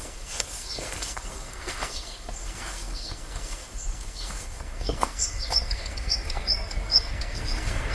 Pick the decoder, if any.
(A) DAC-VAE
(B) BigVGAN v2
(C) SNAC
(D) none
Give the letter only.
C